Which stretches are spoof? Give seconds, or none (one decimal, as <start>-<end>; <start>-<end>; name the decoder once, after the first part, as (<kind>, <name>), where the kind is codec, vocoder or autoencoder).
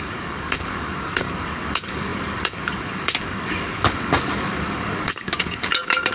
0.0-6.1 (codec, DAC)